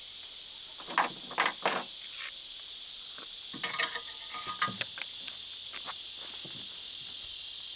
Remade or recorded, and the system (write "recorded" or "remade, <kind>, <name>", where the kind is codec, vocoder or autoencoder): recorded